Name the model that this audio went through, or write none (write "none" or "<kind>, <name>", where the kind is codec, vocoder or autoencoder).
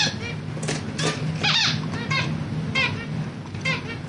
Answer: none